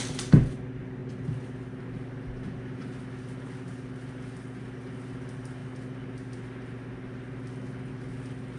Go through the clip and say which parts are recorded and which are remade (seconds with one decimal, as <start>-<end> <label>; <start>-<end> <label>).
0.0-8.6 recorded